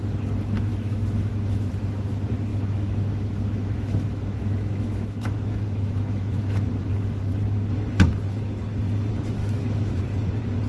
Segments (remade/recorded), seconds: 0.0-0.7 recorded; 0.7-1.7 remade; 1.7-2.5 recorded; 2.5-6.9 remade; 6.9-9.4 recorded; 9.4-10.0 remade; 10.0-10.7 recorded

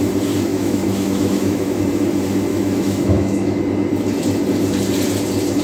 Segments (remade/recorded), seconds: 0.0-0.5 recorded; 0.5-1.8 remade; 1.8-2.5 recorded; 2.5-3.6 remade; 3.6-5.6 recorded